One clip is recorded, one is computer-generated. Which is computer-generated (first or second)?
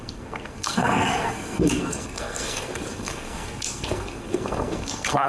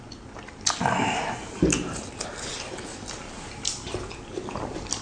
first